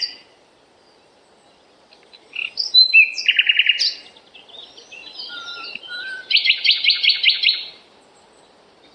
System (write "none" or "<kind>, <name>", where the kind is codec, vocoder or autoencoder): none